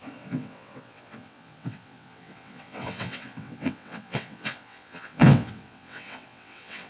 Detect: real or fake fake